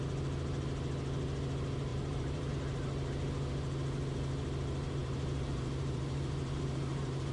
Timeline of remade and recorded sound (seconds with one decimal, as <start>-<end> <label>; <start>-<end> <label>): 0.0-1.9 recorded; 1.9-2.5 remade; 2.5-5.0 recorded; 5.0-7.3 remade